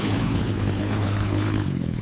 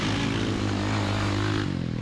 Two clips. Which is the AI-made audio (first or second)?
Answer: first